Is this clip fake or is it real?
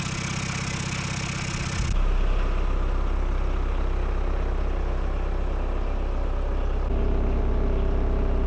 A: real